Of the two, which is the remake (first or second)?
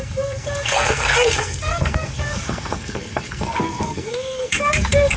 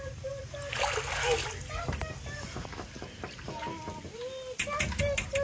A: first